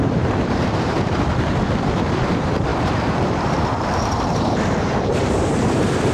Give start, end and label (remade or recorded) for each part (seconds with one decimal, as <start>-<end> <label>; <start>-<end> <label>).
0.0-6.1 remade